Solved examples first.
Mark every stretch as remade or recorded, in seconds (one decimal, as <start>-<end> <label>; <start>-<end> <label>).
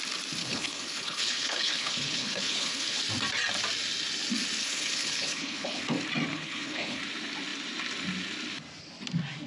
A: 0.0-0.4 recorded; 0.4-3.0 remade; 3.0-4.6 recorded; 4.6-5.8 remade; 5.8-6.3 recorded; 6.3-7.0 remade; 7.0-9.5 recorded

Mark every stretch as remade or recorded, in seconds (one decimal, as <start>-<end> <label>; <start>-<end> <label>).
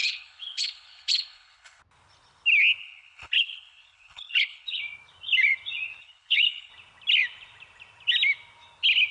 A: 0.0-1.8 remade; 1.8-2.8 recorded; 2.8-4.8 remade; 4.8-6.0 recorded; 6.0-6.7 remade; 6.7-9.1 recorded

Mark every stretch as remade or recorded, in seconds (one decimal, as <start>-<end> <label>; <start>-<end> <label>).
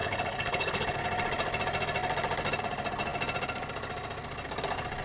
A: 0.0-1.0 remade; 1.0-5.0 recorded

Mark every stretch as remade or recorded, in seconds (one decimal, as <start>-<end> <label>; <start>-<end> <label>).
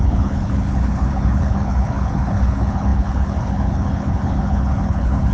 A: 0.0-5.3 remade